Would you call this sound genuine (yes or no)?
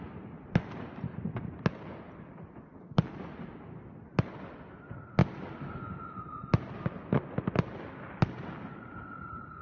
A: yes